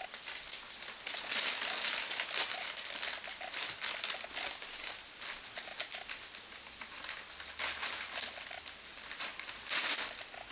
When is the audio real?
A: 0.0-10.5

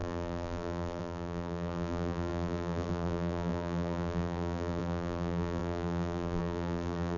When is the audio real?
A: none

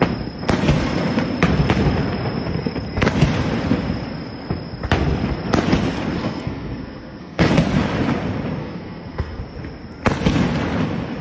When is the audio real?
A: 0.0-6.2; 7.5-8.6; 9.4-11.2

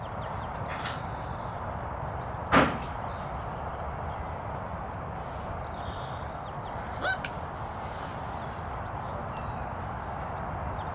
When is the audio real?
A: 0.0-10.9